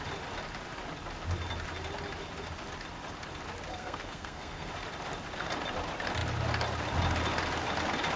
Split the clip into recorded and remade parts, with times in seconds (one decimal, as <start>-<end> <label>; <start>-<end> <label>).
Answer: 0.0-3.7 recorded; 3.7-4.7 remade; 4.7-8.2 recorded